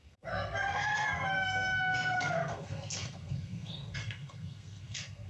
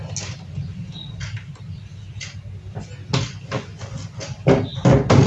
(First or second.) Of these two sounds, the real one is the second